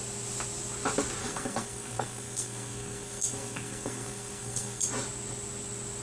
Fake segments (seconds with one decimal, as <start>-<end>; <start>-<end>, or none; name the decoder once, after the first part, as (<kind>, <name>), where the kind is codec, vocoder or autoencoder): 1.2-4.8 (codec, SNAC)